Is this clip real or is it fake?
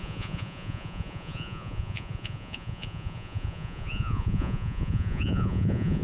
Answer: fake